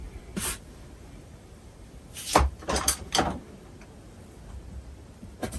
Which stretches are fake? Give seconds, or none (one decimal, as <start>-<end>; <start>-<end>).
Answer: 0.0-3.4